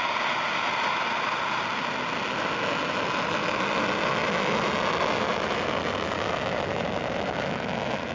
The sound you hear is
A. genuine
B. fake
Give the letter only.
A